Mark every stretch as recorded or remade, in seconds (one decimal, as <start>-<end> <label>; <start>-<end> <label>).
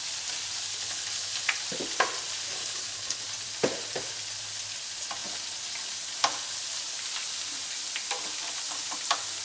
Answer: 0.0-0.6 recorded; 0.6-1.6 remade; 1.6-2.6 recorded; 2.6-3.2 remade; 3.2-9.4 recorded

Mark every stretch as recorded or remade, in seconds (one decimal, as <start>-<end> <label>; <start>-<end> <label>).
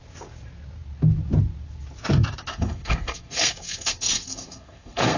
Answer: 0.0-2.5 recorded; 2.5-5.2 remade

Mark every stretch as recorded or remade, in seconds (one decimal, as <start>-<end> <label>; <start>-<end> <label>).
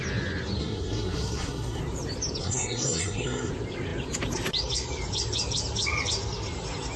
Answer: 0.0-0.6 recorded; 0.6-1.8 remade; 1.8-2.4 recorded; 2.4-3.5 remade; 3.5-7.0 recorded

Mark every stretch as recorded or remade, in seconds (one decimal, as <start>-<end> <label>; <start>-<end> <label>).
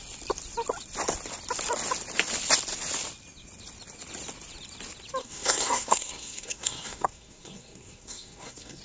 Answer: 0.0-5.2 recorded; 5.2-8.8 remade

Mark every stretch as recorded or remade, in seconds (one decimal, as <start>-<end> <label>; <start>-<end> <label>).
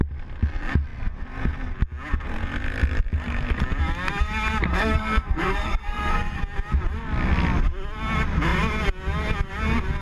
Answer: 0.0-4.7 recorded; 4.7-6.4 remade; 6.4-10.0 recorded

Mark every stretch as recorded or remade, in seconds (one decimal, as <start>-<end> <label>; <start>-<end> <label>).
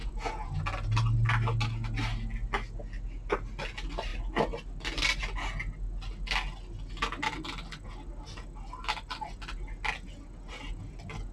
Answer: 0.0-0.6 remade; 0.6-11.3 recorded